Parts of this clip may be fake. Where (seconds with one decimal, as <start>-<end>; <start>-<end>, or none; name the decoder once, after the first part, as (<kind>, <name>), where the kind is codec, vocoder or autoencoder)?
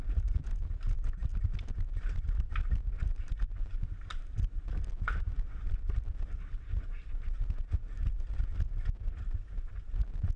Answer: 4.1-4.6 (vocoder, BigVGAN v2)